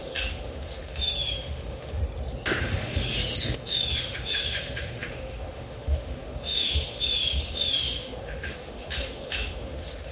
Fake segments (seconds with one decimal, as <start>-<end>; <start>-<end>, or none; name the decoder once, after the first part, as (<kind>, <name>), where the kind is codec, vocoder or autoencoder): 0.0-2.0 (autoencoder, DAC-VAE); 2.6-10.1